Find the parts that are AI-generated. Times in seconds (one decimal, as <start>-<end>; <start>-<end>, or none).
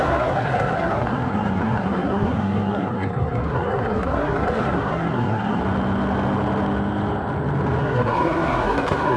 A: 0.0-5.6; 7.8-9.2